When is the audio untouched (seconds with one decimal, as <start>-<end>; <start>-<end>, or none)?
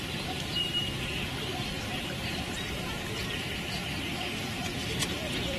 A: none